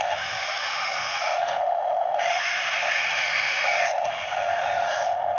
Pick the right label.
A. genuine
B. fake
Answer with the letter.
B